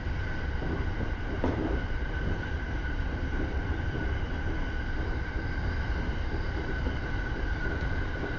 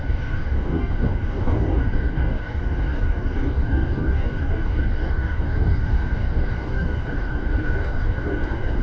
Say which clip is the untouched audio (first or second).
first